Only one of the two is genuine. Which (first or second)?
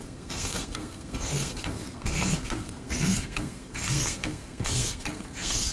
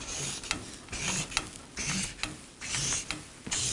second